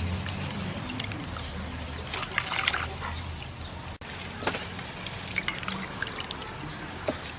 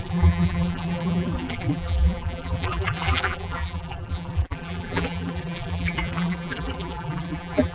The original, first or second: first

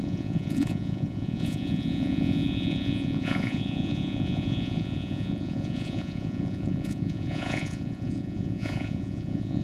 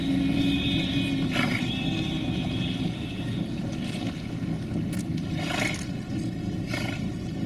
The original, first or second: second